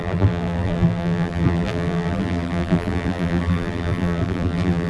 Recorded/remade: remade